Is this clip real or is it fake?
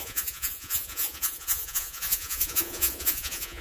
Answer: fake